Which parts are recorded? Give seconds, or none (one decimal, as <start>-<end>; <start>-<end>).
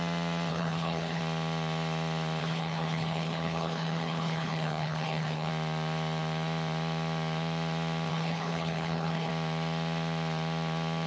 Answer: 0.0-0.5; 1.2-2.4; 5.5-8.1; 9.3-11.1